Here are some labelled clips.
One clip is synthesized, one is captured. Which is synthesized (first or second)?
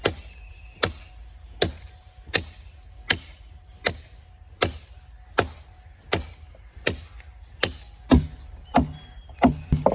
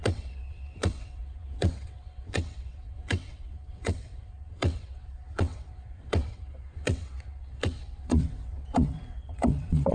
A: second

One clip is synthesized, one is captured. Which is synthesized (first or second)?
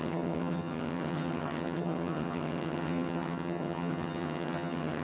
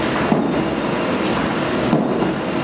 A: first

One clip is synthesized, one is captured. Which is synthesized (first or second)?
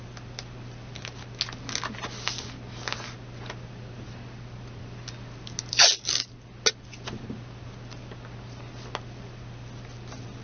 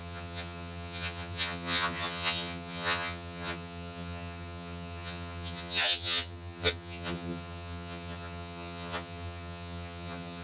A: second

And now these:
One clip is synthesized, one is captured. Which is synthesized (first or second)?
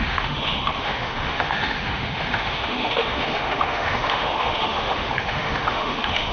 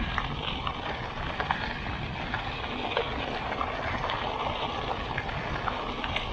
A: first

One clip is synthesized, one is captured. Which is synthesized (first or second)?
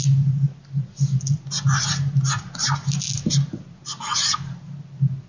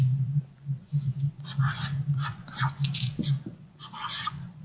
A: second